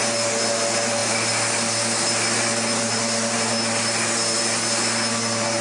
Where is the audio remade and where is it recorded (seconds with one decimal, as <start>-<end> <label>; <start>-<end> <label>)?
0.0-5.6 recorded

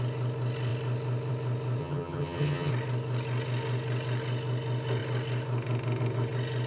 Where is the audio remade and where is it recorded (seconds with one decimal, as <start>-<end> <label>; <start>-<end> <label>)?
0.0-1.8 recorded; 1.8-2.7 remade; 2.7-6.7 recorded

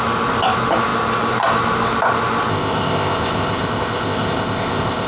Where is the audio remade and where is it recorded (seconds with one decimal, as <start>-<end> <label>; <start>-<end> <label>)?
0.0-2.5 recorded; 2.5-5.1 remade

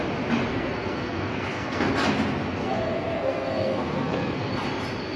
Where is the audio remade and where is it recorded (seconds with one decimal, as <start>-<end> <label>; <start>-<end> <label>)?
0.0-0.5 recorded; 0.5-1.9 remade; 1.9-2.6 recorded; 2.6-4.5 remade; 4.5-5.2 recorded

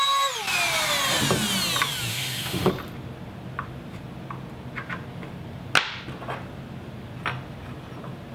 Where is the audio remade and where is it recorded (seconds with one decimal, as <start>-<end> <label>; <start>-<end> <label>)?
0.0-2.1 recorded; 2.1-2.7 remade; 2.7-8.3 recorded

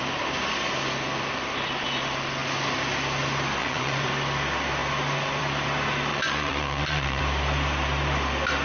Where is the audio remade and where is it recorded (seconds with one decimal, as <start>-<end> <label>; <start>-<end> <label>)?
0.0-3.6 recorded; 3.6-4.1 remade; 4.1-6.1 recorded; 6.1-7.2 remade; 7.2-8.6 recorded